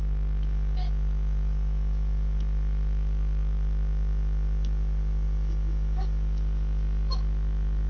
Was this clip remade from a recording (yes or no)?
yes